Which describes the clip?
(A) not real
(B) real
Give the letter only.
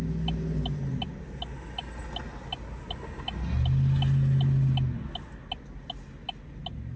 B